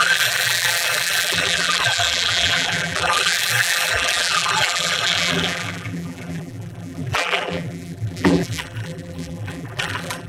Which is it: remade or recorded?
remade